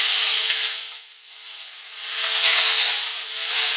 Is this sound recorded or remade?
remade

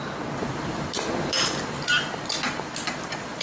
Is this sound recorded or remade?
recorded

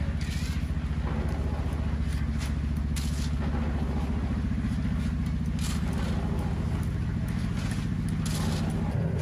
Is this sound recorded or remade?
recorded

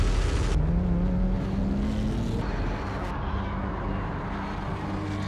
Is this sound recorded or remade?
recorded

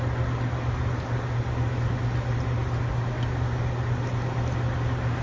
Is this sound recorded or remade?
recorded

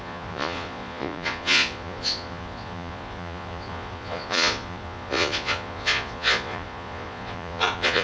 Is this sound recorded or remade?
remade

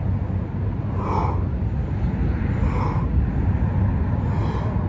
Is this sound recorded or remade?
recorded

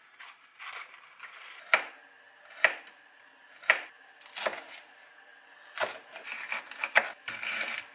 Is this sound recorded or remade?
recorded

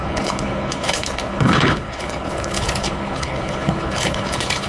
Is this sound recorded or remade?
remade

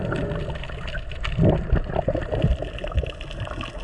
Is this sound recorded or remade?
recorded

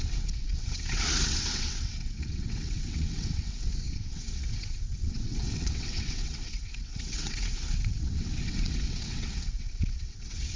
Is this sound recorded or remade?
remade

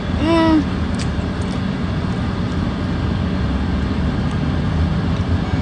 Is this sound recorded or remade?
recorded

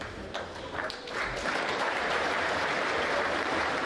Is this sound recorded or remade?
remade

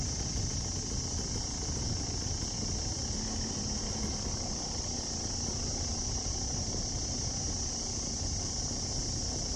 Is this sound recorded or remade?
recorded